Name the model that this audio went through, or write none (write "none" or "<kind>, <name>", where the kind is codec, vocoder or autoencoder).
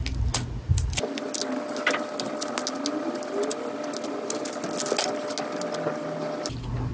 none